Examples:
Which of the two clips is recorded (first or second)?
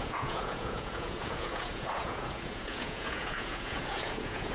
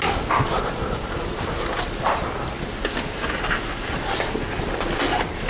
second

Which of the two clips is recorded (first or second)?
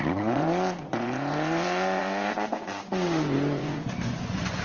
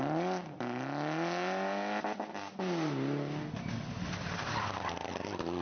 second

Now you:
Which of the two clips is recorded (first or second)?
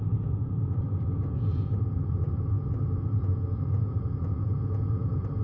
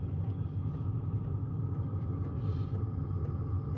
second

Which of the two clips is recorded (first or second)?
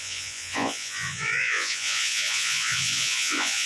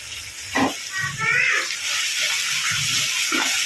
second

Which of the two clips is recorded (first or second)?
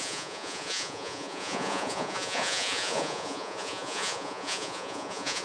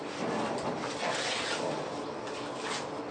second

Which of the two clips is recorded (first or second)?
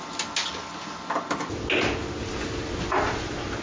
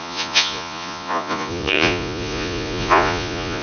first